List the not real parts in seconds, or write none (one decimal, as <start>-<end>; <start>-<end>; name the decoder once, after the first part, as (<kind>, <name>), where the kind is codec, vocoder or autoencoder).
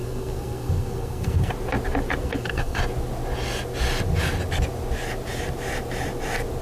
0.0-1.5 (codec, SNAC); 2.2-2.8